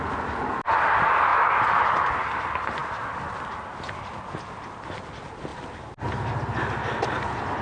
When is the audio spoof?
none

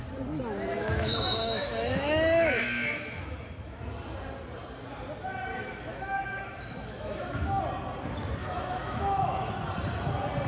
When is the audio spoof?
0.7-3.8 (autoencoder, DAC-VAE); 5.5-7.6; 8.4-9.5

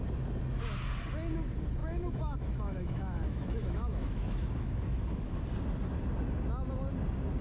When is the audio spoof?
1.8-5.4 (autoencoder, DAC-VAE)

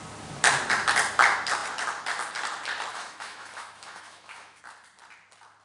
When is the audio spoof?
2.9-4.6 (autoencoder, DAC-VAE)

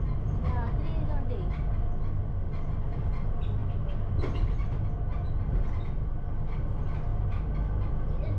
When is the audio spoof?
none